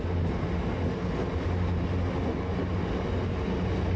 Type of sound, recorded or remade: recorded